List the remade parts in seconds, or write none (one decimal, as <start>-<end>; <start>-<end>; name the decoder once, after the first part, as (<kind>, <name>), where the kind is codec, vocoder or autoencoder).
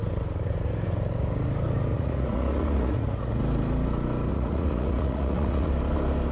1.9-3.4 (vocoder, Vocos); 4.3-5.7